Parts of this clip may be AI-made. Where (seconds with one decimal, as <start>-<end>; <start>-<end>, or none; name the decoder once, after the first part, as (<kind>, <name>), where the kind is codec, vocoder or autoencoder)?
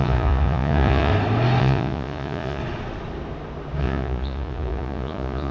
0.0-1.1 (vocoder, Vocos); 1.6-2.6; 3.8-5.5